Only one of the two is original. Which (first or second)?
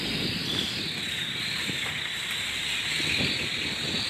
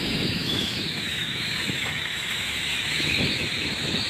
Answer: first